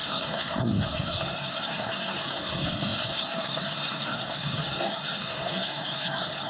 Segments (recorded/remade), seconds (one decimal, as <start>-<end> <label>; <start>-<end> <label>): 0.0-6.5 remade